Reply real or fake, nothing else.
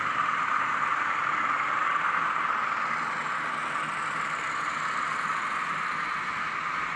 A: real